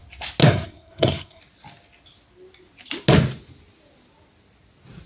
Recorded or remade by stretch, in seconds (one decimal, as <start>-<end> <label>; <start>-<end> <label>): 0.0-0.4 recorded; 0.4-1.4 remade; 1.4-5.1 recorded